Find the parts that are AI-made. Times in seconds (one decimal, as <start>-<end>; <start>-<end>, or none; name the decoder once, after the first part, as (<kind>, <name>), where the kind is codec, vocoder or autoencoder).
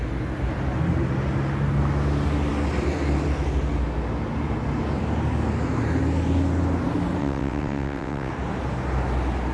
7.2-8.3 (vocoder, WaveNeXt)